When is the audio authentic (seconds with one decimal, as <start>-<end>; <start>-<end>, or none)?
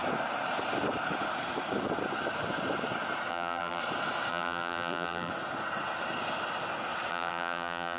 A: 0.0-3.3; 3.8-4.3; 5.3-7.1